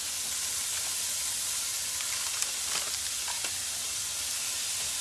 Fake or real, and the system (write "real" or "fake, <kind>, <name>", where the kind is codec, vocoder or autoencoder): real